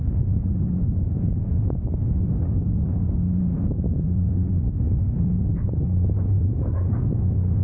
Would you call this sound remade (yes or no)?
no